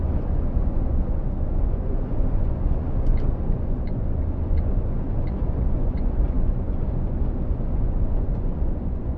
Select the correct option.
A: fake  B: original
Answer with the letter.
A